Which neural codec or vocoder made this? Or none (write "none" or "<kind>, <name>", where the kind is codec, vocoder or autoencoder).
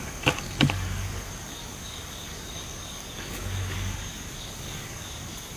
codec, DAC